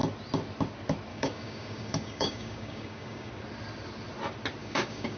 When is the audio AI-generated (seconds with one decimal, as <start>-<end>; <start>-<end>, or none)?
1.1-3.3; 4.6-5.2